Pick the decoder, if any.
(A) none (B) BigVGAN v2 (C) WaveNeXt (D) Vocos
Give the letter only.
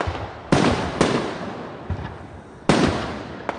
A